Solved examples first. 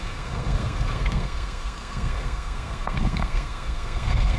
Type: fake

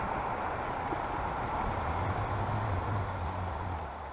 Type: real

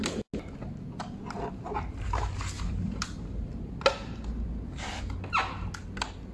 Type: real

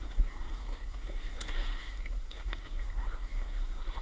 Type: fake